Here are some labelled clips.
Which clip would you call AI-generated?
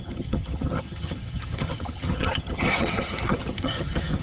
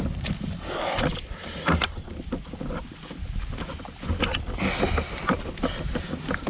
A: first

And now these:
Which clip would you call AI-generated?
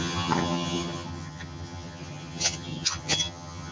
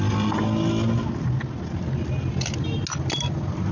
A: first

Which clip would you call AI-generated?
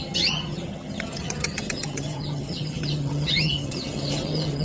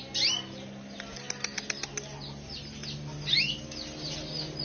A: first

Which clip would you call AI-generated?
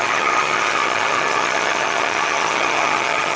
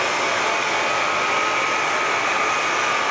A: first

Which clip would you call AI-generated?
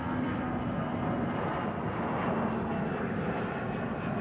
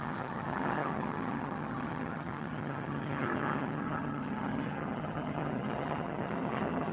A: second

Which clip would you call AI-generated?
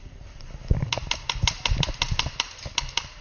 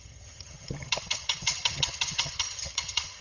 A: second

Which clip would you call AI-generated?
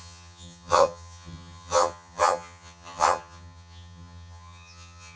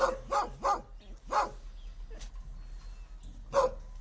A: first